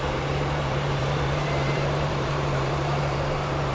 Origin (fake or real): fake